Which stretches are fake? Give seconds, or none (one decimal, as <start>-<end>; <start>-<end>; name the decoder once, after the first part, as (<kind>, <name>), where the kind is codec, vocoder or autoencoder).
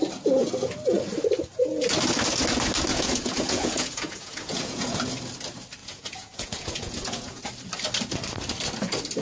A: 2.9-5.0 (vocoder, Vocos); 5.8-7.4